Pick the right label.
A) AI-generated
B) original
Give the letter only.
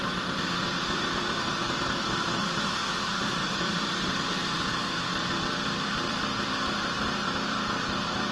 A